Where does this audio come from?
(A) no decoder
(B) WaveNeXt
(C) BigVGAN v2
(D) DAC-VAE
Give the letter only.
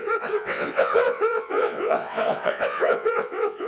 B